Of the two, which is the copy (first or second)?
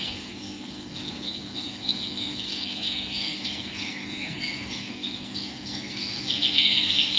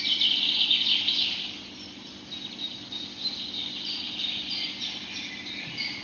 first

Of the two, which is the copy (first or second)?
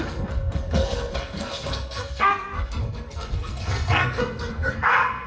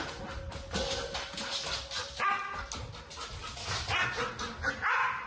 first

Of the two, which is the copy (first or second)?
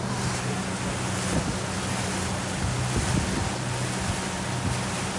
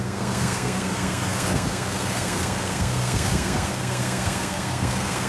second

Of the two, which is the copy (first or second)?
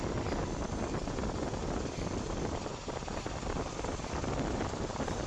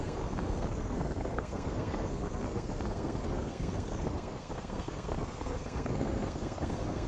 second